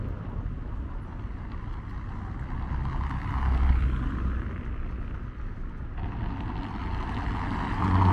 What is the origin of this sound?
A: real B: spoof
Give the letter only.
A